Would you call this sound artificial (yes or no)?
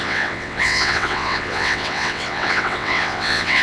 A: yes